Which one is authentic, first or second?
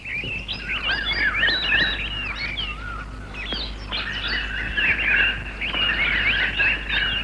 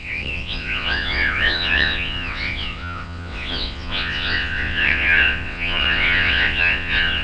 first